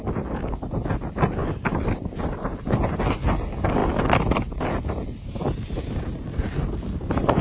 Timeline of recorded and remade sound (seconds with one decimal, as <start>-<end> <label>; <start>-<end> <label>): 0.0-1.4 recorded; 1.4-3.0 remade; 3.0-7.4 recorded

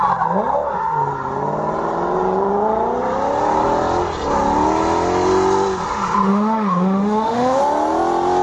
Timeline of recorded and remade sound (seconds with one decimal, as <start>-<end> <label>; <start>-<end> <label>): 0.0-6.3 recorded; 6.3-7.6 remade; 7.6-8.4 recorded